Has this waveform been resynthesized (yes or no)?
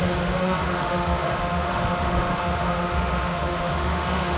yes